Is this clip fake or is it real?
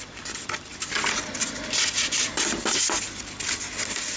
real